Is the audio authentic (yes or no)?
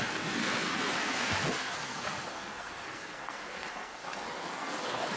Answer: no